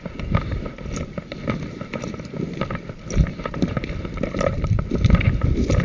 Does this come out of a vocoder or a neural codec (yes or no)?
no